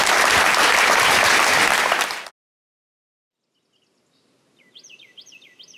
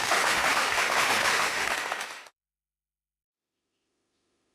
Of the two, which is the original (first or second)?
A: first